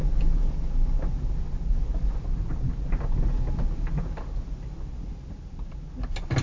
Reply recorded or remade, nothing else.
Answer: recorded